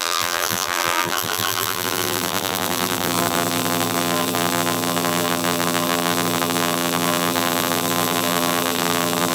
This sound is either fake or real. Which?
fake